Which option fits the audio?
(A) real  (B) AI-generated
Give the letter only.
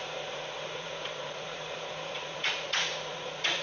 B